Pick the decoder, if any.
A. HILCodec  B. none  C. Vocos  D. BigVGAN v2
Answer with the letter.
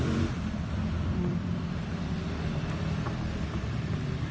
D